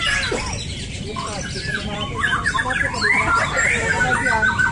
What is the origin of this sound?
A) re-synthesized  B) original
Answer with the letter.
B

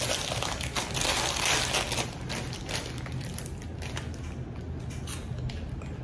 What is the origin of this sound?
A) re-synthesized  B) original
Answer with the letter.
B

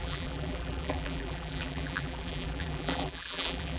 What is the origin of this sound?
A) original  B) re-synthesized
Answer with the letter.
B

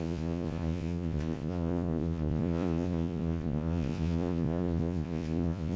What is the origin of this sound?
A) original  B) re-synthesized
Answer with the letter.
B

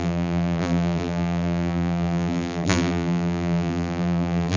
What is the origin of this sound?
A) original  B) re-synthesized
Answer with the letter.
B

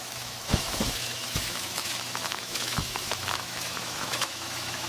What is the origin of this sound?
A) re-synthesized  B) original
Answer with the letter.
A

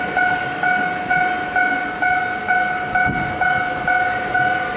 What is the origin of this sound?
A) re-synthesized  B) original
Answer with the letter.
B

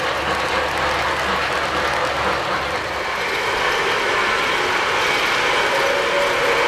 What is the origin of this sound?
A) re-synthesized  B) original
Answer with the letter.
B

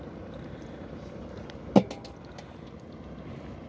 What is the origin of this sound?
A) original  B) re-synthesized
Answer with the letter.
A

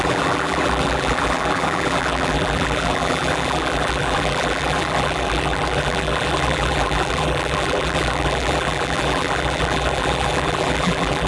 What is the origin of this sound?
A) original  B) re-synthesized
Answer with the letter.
B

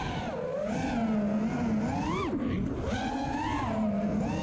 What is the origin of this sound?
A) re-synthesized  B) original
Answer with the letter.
B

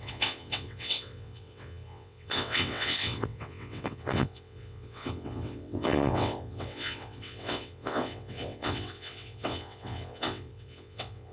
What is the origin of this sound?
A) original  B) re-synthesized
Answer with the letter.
B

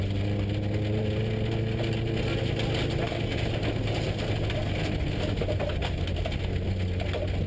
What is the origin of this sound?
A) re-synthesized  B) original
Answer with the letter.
B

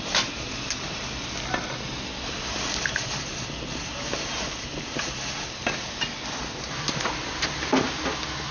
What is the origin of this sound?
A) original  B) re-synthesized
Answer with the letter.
A